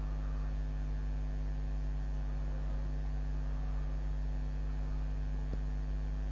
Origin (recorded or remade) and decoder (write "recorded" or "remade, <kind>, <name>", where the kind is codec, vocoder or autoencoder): recorded